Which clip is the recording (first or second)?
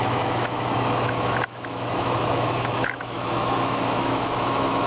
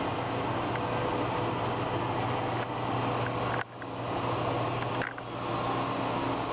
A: second